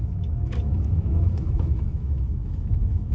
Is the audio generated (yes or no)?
yes